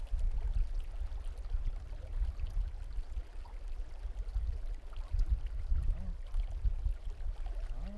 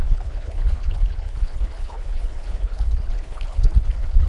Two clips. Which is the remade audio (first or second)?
second